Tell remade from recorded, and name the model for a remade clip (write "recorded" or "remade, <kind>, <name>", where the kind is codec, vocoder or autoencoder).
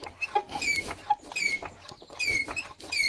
recorded